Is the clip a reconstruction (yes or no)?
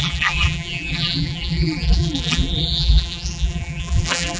yes